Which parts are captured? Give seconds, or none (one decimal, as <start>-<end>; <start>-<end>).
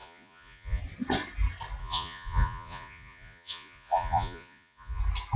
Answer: 0.8-1.8; 5.0-5.4